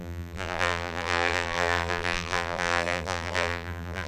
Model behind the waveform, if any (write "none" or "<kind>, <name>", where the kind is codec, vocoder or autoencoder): vocoder, BigVGAN v2